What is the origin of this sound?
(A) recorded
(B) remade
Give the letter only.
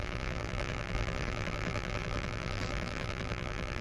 B